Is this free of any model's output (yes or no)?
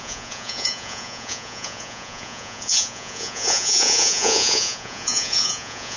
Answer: no